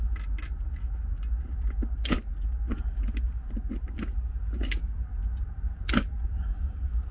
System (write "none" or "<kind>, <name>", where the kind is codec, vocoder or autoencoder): none